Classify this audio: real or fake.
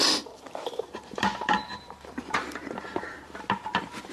fake